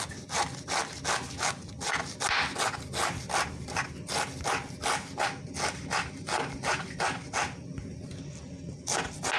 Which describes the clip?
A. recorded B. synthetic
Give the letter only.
A